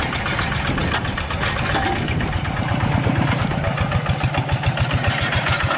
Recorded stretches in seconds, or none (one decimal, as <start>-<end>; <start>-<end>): 0.0-5.8